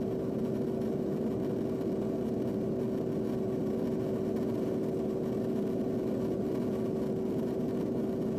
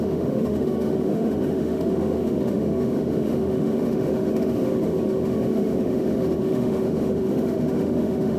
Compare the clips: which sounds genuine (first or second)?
first